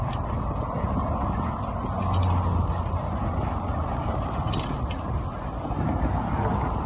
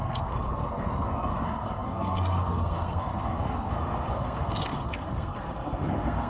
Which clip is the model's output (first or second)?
second